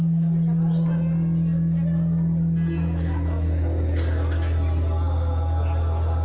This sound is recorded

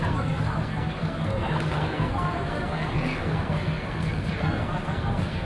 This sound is remade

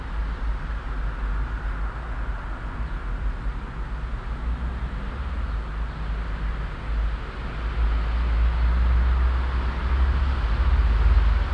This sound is recorded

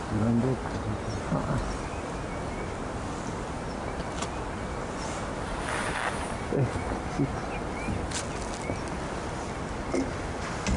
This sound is recorded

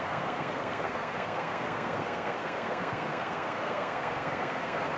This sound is remade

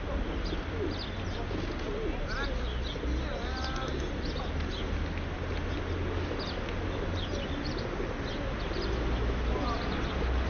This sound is recorded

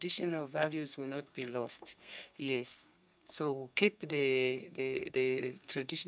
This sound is remade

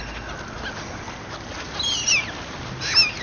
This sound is recorded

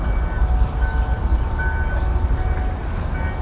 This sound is recorded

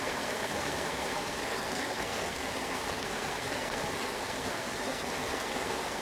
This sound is remade